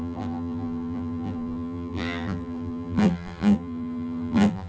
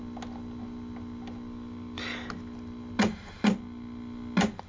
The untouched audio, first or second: second